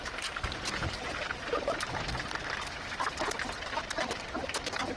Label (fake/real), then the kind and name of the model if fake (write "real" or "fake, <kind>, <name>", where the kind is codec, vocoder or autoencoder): real